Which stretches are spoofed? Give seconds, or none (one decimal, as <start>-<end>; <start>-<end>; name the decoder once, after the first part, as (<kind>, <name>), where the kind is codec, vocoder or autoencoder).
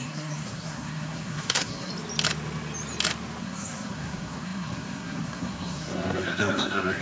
0.0-1.9 (codec, SNAC); 3.4-7.0